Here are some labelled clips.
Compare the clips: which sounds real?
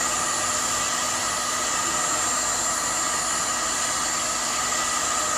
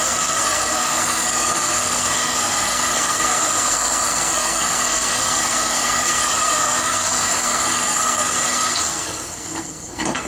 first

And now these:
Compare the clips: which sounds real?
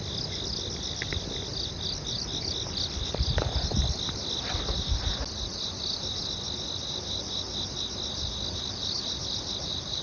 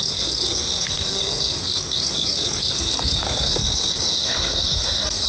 first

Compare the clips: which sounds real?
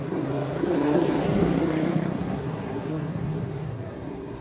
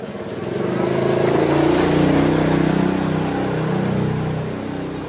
second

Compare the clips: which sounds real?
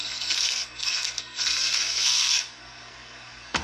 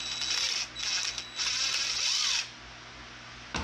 second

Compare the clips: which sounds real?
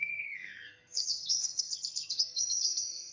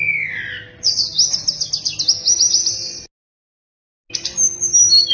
second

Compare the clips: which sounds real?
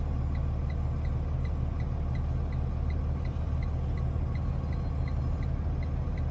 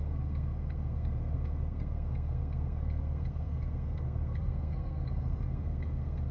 first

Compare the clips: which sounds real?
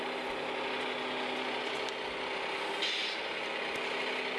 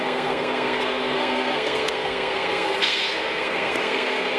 first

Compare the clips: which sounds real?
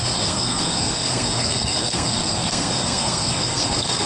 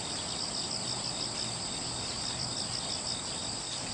second